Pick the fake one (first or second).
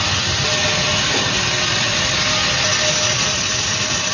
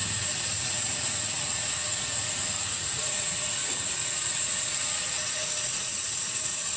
second